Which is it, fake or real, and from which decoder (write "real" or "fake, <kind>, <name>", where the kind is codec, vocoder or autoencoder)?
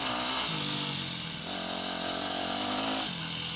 real